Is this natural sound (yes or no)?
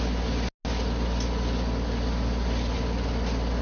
yes